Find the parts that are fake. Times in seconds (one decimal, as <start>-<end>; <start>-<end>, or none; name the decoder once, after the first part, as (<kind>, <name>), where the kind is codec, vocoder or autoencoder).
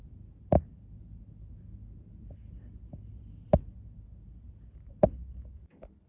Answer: none